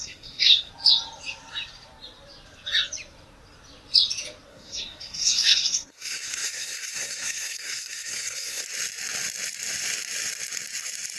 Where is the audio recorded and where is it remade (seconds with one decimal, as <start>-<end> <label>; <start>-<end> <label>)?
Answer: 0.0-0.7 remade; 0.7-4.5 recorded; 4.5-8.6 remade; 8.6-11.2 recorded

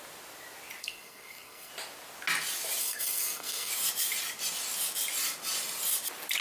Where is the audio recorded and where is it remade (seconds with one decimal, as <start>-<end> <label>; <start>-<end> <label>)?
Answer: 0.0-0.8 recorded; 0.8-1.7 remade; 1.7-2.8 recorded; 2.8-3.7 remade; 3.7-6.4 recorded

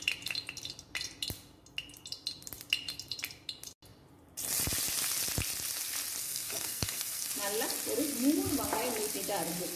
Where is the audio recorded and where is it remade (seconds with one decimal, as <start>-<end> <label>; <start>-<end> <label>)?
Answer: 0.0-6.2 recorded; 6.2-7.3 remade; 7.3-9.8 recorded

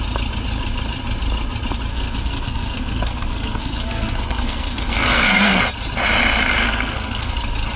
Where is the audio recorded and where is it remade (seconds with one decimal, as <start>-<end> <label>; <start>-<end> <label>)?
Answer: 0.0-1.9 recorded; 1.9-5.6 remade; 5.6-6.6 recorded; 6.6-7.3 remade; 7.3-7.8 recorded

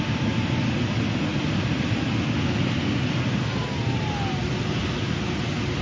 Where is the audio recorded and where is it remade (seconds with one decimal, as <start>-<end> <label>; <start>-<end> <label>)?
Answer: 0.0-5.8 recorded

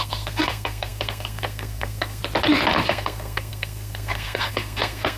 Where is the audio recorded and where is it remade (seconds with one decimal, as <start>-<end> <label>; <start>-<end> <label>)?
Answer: 0.0-2.2 remade; 2.2-2.9 recorded; 2.9-5.2 remade